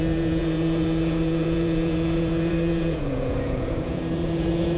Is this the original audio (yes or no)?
no